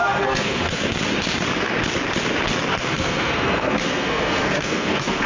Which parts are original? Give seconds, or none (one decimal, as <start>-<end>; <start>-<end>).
0.8-2.7